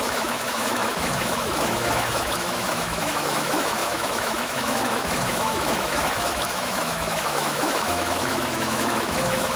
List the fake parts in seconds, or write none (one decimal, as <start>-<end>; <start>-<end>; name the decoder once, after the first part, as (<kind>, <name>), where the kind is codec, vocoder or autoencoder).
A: 0.0-9.6 (autoencoder, DAC-VAE)

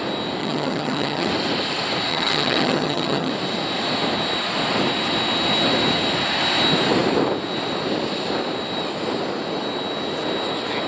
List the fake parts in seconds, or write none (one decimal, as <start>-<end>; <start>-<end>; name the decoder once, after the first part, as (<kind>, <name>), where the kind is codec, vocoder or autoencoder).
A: 0.4-1.3 (vocoder, HiFi-GAN); 2.1-3.3

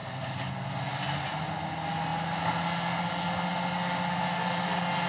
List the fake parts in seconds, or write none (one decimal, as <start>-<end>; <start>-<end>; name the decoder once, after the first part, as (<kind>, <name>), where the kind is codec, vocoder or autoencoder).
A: none

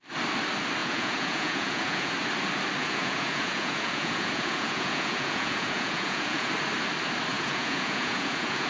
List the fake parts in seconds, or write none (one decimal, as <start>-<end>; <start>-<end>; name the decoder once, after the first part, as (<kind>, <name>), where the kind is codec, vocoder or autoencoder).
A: 0.8-2.1 (vocoder, Vocos); 2.8-6.5; 7.3-8.7

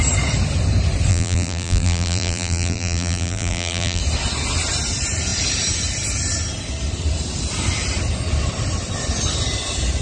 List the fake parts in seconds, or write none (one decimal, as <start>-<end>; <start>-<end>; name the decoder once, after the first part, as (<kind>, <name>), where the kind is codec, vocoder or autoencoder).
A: 1.1-4.0 (vocoder, BigVGAN v2)

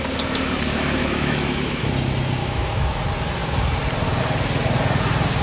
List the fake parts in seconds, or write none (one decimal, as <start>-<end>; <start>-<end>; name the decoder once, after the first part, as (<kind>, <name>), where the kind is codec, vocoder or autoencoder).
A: 1.0-1.9 (autoencoder, DAC-VAE); 2.4-3.0